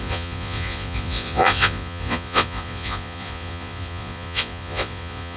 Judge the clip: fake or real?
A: fake